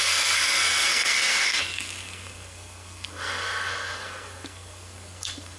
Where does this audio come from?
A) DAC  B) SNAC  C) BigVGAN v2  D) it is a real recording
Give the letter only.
B